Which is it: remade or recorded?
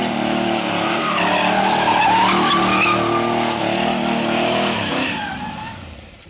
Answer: recorded